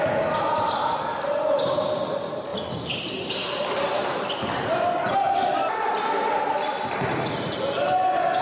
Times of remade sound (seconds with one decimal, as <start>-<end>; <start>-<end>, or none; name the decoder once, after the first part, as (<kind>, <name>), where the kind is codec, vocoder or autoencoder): none